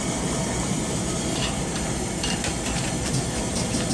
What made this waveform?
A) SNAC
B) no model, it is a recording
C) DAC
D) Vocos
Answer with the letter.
B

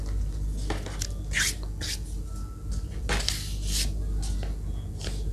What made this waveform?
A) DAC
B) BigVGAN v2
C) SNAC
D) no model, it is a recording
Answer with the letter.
D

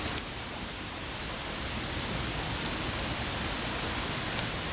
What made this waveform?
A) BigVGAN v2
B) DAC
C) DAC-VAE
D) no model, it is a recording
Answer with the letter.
D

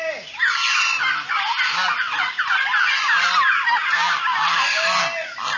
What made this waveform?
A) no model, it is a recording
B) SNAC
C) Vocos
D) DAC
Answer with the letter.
A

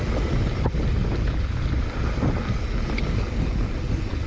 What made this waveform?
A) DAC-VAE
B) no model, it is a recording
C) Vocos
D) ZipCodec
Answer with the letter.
B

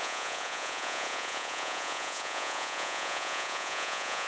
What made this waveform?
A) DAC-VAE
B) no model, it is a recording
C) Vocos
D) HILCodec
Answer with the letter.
C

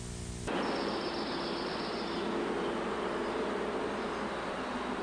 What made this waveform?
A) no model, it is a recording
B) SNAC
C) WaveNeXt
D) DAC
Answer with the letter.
A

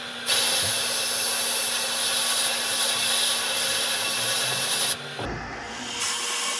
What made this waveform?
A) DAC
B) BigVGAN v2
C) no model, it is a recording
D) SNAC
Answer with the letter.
C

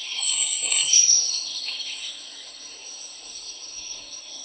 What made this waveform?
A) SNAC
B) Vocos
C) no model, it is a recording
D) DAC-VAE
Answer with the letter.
A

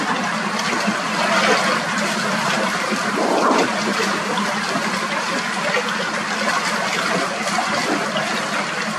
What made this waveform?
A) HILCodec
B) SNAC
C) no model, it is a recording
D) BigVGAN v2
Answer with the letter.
C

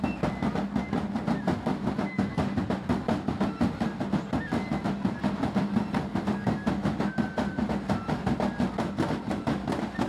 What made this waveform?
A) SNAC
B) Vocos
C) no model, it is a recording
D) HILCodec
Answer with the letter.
C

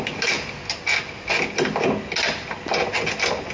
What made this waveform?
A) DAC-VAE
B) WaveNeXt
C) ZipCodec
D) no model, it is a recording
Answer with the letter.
D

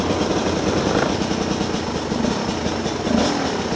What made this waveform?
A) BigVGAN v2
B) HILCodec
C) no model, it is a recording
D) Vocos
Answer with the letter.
C